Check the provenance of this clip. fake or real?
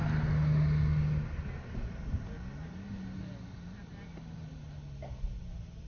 real